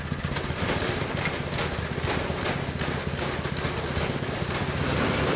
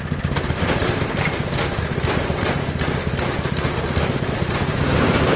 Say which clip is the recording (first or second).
first